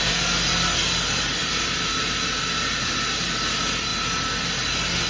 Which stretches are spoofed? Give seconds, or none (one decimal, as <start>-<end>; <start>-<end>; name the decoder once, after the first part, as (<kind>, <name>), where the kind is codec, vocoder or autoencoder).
none